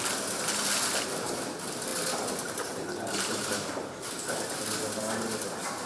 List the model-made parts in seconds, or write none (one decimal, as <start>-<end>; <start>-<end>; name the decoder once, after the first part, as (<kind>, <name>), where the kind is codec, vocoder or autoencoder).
none